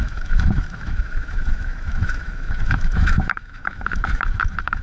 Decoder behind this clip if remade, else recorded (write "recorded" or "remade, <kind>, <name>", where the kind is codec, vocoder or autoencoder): remade, autoencoder, DAC-VAE